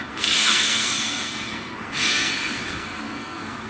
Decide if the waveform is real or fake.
fake